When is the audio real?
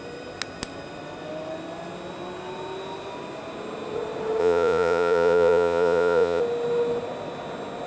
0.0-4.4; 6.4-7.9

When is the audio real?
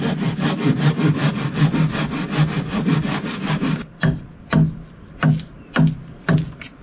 0.0-6.8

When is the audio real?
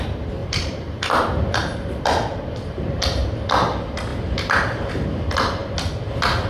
0.0-0.4; 3.0-4.1; 4.9-6.5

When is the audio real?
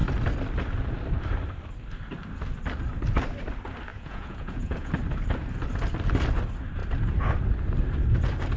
0.0-3.9; 4.9-8.6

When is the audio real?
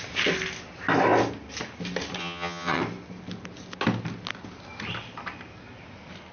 0.0-2.2; 2.8-6.3